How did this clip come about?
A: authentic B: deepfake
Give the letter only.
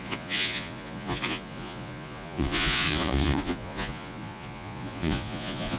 B